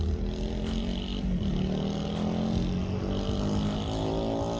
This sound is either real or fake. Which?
real